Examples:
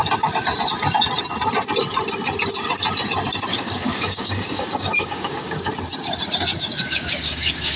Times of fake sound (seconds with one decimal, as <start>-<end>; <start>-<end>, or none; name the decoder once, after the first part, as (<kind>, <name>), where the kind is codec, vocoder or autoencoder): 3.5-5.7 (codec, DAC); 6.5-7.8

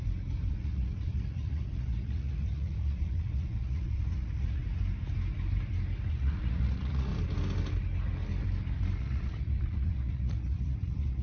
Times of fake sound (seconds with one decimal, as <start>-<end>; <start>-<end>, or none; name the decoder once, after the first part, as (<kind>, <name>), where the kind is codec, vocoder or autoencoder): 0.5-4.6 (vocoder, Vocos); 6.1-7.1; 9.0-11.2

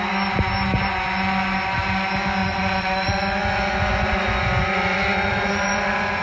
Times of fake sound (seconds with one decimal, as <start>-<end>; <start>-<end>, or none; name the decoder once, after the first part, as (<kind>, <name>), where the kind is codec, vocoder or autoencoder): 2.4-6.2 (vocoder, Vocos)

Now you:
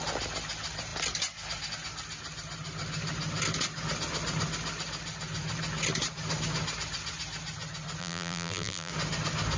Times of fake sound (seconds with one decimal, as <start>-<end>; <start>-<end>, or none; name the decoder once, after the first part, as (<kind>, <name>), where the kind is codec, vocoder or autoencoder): 8.0-8.9 (vocoder, BigVGAN v2)

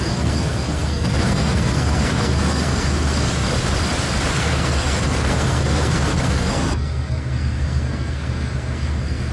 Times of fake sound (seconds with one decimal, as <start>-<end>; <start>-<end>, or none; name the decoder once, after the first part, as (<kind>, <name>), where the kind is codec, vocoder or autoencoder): 0.0-3.3 (codec, SNAC); 4.4-9.3

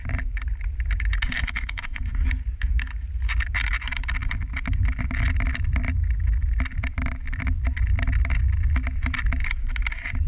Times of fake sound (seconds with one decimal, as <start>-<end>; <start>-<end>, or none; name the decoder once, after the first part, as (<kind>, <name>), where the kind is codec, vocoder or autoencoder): 1.4-2.0 (autoencoder, DAC-VAE)

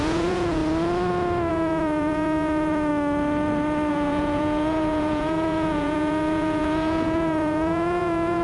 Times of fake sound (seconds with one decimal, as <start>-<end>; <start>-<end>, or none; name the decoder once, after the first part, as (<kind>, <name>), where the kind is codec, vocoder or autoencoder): 0.0-0.6 (vocoder, Vocos); 1.5-2.9; 3.9-8.4